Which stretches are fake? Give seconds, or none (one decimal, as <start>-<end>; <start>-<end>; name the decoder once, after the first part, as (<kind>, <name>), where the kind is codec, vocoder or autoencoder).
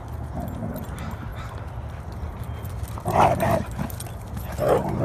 none